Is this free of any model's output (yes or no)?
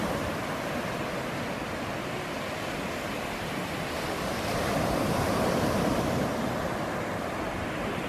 yes